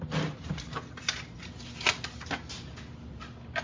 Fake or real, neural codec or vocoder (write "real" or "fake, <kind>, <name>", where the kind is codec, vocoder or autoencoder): real